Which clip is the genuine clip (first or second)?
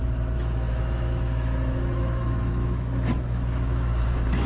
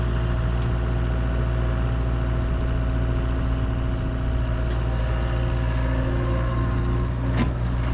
second